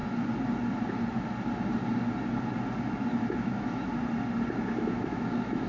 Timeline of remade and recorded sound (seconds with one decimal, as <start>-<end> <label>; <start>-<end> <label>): 0.0-3.4 recorded; 3.4-3.9 remade; 3.9-4.8 recorded; 4.8-5.7 remade